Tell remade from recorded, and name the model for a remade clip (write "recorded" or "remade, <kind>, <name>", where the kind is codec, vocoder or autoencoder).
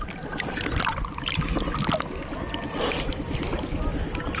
recorded